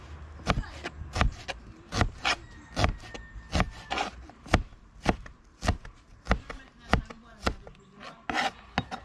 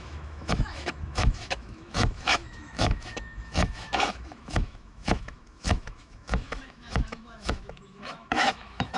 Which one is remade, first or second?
second